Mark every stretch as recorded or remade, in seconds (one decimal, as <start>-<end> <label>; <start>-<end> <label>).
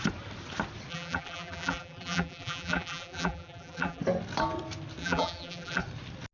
0.0-0.9 recorded; 0.9-4.0 remade; 4.0-5.0 recorded; 5.0-5.8 remade; 5.8-6.3 recorded